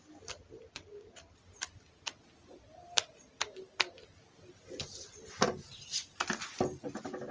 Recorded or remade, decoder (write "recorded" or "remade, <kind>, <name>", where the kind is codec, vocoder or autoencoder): recorded